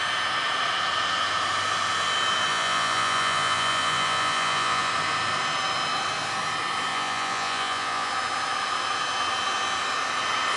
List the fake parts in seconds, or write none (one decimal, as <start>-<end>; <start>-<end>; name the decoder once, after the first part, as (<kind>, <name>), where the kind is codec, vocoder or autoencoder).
2.5-4.9 (vocoder, Vocos); 6.9-8.1